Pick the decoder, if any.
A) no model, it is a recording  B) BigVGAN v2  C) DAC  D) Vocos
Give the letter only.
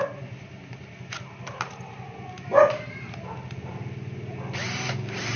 A